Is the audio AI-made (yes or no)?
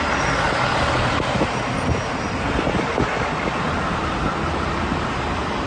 no